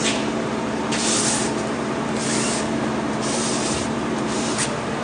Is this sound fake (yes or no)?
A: yes